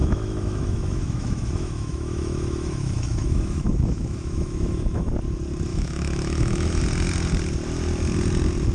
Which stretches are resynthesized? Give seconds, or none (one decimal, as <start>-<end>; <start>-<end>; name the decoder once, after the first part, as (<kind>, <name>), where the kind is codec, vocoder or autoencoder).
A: 0.0-5.1 (autoencoder, DAC-VAE); 5.7-6.8